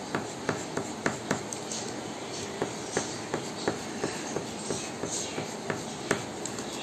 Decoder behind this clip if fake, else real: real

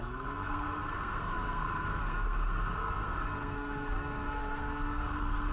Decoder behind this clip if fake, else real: fake, codec, SNAC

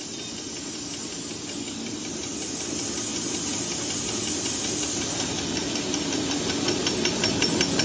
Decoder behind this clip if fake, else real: real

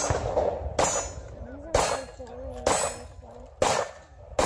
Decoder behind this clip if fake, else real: real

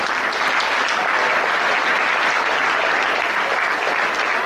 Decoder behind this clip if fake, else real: real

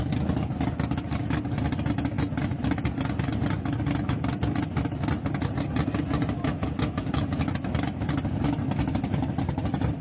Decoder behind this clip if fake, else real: real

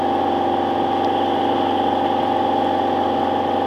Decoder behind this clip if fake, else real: real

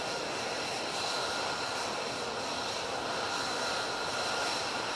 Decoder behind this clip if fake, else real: real